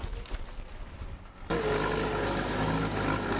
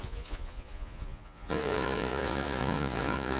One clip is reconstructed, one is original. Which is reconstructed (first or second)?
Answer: second